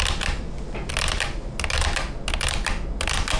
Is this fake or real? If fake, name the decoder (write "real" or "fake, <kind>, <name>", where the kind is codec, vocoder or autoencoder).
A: real